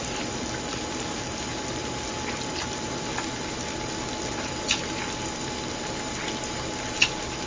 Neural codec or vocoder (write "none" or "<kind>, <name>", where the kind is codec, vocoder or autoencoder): vocoder, BigVGAN v2